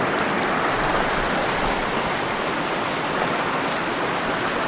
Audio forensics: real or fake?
real